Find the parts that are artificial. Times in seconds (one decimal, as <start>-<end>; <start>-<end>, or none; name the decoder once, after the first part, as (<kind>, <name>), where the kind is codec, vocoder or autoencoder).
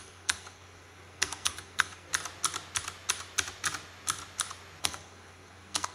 0.0-2.1 (codec, SNAC); 4.8-5.9